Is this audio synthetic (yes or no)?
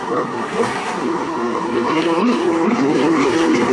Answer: yes